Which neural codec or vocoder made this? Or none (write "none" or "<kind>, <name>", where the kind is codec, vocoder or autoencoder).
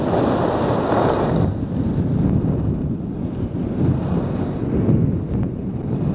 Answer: none